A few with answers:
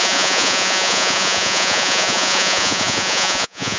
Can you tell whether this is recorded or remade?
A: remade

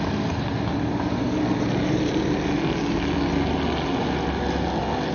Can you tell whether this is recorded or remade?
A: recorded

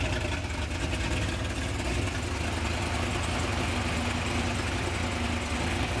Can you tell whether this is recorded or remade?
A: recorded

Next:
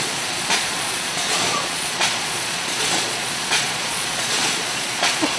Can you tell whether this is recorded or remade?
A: remade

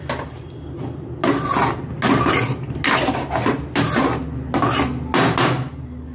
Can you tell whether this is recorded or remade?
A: recorded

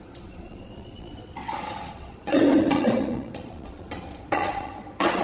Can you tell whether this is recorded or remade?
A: remade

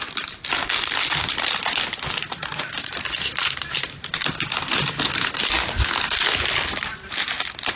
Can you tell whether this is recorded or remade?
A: recorded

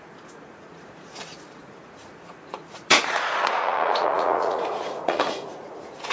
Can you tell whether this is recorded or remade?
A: remade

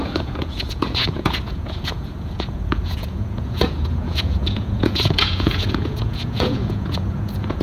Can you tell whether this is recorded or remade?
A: remade